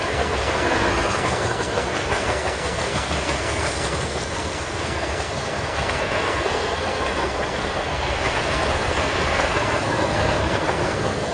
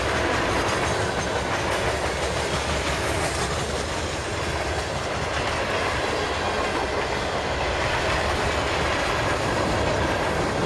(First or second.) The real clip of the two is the second